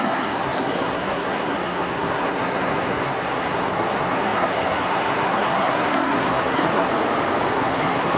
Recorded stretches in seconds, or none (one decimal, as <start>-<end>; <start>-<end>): 6.9-7.5